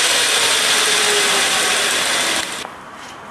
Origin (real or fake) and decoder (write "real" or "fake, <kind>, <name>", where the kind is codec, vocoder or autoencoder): real